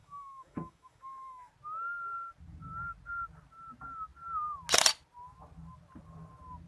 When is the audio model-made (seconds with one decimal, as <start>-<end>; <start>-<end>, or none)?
0.0-1.5